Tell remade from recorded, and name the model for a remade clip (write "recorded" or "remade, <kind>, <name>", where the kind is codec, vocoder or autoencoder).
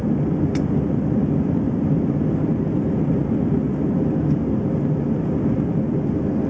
recorded